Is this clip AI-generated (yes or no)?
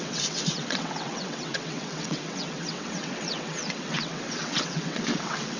yes